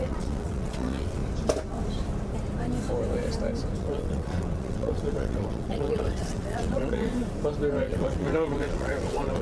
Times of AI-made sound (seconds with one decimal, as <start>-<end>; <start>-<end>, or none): 0.0-1.2; 3.8-7.1; 7.7-9.4